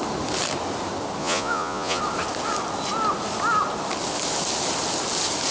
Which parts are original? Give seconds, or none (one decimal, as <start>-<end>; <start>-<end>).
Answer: 0.0-1.2; 2.0-5.5